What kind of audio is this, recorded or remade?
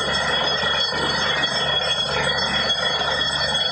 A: recorded